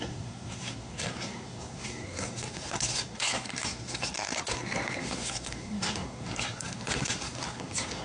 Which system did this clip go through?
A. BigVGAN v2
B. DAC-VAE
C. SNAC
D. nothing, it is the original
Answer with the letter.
C